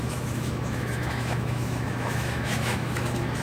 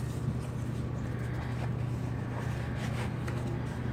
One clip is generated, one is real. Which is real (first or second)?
second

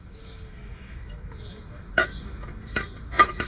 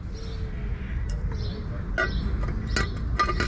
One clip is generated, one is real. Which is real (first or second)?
second